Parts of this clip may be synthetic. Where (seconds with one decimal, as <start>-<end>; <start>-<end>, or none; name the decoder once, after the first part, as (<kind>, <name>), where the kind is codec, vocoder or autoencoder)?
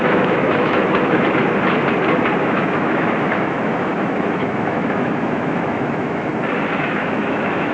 0.0-1.4 (autoencoder, DAC-VAE); 2.4-6.3; 6.8-7.7